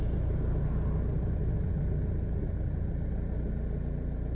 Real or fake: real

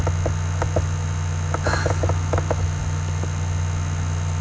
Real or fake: real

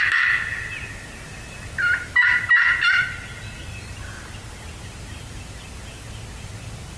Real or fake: real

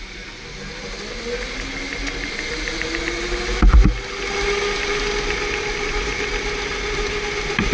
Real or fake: real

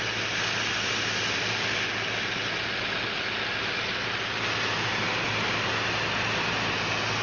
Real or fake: real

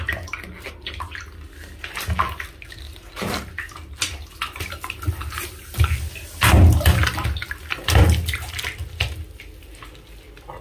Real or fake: real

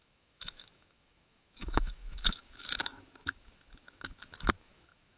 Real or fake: fake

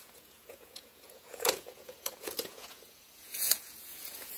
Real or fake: fake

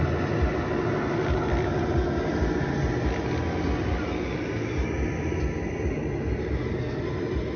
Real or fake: real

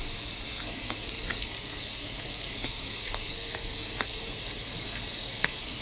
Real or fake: fake